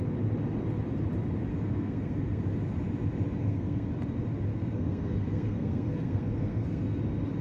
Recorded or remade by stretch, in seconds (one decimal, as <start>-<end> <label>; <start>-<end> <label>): 0.0-1.5 recorded; 1.5-2.4 remade; 2.4-3.4 recorded; 3.4-3.9 remade; 3.9-4.5 recorded; 4.5-7.0 remade; 7.0-7.4 recorded